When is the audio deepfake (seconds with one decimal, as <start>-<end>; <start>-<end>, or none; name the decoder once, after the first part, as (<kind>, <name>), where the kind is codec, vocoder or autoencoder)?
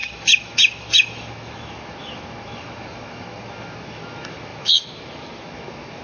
0.0-6.0 (autoencoder, DAC-VAE)